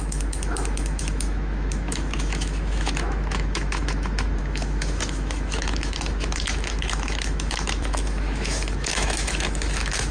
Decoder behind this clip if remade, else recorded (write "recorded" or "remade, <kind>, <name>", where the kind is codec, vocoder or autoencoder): remade, autoencoder, DAC-VAE